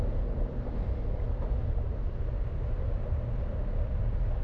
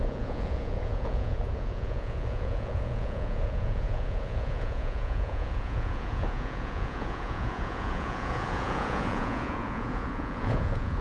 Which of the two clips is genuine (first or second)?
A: first